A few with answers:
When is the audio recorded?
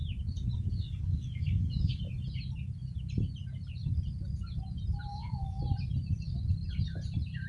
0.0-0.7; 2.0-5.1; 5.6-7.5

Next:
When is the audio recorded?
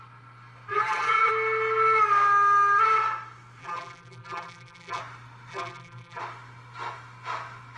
0.0-0.7; 1.3-3.6; 5.0-5.5; 6.2-7.8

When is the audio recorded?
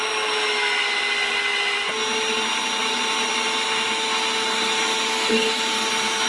0.0-6.3